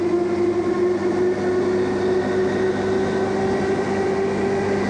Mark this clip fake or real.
real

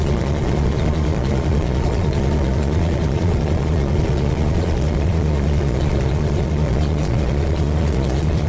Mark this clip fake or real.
fake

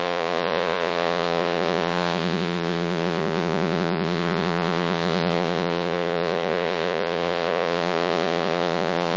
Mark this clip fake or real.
fake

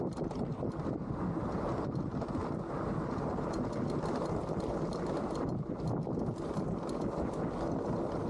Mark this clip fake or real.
real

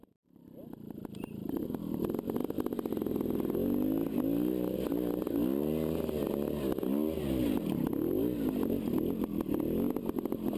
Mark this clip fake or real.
real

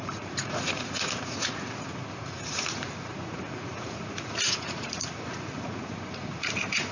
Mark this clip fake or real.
fake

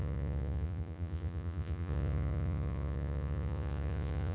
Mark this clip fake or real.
fake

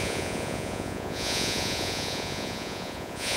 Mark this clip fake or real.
fake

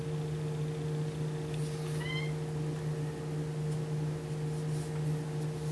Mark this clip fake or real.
real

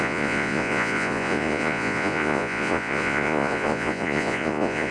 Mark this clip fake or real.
fake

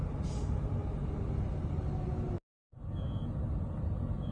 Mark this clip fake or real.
real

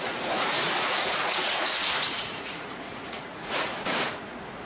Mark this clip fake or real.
fake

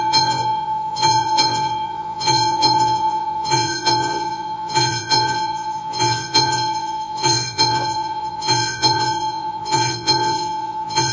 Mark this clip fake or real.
fake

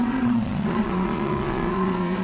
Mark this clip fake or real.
fake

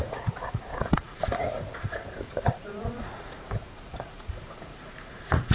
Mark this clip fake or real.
fake